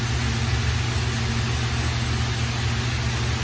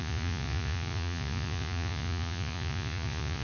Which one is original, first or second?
first